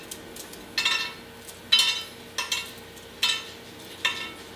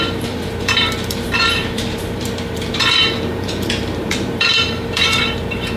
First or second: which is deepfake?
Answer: second